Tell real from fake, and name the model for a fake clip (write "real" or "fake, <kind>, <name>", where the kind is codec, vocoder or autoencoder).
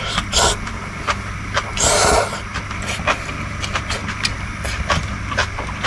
real